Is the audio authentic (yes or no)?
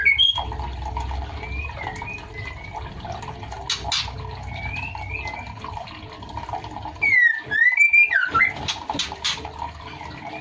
yes